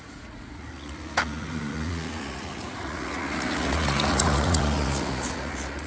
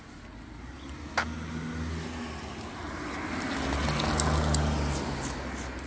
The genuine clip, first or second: second